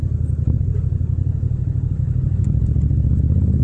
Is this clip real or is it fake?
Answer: real